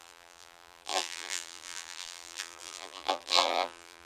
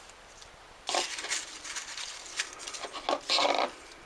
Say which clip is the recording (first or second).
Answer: second